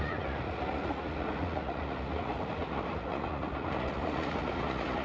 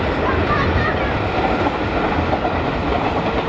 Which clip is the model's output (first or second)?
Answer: first